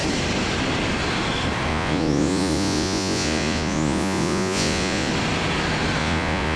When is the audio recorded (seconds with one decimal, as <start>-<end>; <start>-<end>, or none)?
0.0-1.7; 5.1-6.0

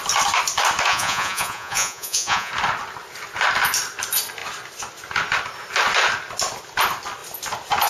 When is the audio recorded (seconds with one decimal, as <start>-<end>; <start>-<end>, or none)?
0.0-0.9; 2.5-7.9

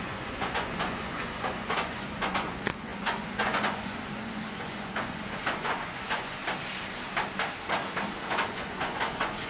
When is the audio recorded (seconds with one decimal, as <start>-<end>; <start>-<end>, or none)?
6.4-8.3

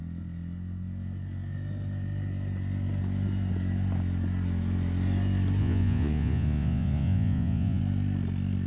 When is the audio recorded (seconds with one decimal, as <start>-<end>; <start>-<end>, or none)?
0.0-5.6; 7.8-8.7

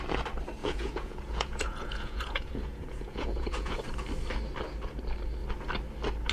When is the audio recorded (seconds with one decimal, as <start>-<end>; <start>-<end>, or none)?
0.0-0.6; 3.8-6.3